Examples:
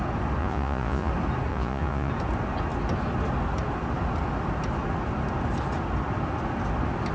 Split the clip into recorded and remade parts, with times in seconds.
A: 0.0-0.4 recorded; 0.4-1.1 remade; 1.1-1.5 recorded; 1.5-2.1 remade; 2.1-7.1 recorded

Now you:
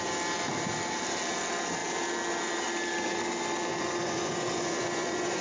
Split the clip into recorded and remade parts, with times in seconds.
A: 0.0-3.7 recorded; 3.7-5.4 remade

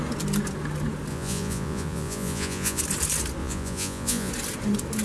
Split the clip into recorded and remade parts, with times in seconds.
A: 0.0-1.1 recorded; 1.1-2.8 remade; 2.8-3.4 recorded; 3.4-4.3 remade; 4.3-5.0 recorded

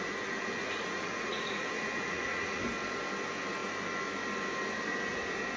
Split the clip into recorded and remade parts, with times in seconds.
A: 0.0-0.6 recorded; 0.6-2.6 remade; 2.6-5.6 recorded

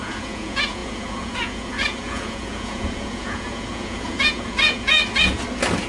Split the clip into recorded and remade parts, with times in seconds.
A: 0.0-5.0 remade; 5.0-5.9 recorded

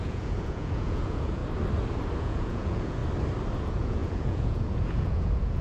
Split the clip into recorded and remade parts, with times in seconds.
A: 0.0-1.4 remade; 1.4-2.2 recorded; 2.2-3.0 remade; 3.0-3.6 recorded; 3.6-5.6 remade